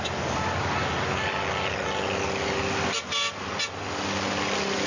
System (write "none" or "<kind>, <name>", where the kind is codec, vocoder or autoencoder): none